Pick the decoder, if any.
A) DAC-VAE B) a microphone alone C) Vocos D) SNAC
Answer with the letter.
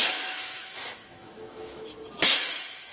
A